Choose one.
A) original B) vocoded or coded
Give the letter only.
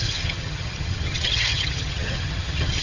B